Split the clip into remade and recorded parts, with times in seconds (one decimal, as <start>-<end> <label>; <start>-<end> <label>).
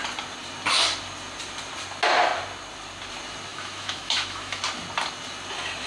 0.0-3.5 recorded; 3.5-4.6 remade; 4.6-5.9 recorded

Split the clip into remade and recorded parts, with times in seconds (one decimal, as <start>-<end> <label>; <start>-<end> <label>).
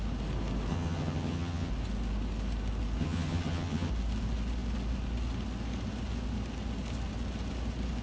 0.0-0.7 recorded; 0.7-1.7 remade; 1.7-3.0 recorded; 3.0-3.9 remade; 3.9-8.0 recorded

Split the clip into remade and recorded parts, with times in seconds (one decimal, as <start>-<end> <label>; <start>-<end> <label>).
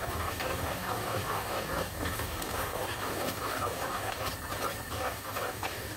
0.0-4.3 remade; 4.3-4.9 recorded; 4.9-6.0 remade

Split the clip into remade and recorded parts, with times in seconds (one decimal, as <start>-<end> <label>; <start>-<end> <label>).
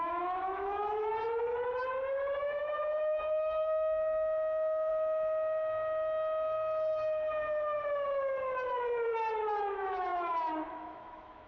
0.0-1.1 remade; 1.1-2.4 recorded; 2.4-4.9 remade; 4.9-9.6 recorded; 9.6-11.5 remade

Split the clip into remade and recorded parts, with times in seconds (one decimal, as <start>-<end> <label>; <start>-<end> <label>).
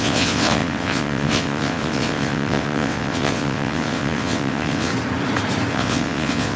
0.0-4.9 remade; 4.9-5.7 recorded; 5.7-6.6 remade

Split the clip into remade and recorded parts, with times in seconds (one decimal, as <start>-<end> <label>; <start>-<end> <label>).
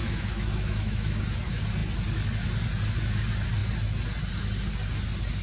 0.0-1.2 remade; 1.2-5.4 recorded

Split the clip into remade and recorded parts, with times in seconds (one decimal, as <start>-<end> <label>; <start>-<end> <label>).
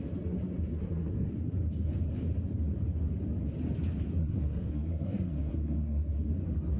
0.0-0.7 recorded; 0.7-1.3 remade; 1.3-4.2 recorded; 4.2-6.3 remade; 6.3-6.8 recorded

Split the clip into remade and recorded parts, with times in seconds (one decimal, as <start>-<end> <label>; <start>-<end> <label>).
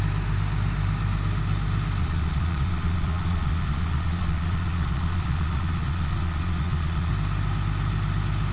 0.0-2.0 recorded; 2.0-7.1 remade; 7.1-8.5 recorded